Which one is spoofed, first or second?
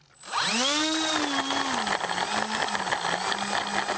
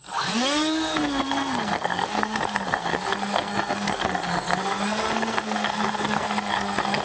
second